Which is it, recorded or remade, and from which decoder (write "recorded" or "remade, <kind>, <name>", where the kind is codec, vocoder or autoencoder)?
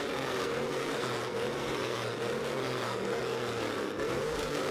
remade, codec, SNAC